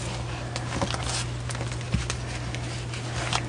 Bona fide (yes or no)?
yes